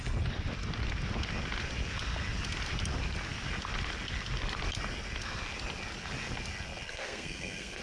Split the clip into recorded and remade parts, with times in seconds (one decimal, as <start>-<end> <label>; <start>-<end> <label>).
0.0-6.9 recorded; 6.9-7.8 remade